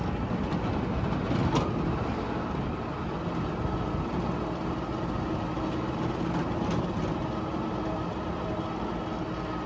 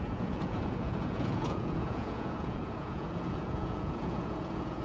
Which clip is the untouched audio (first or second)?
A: first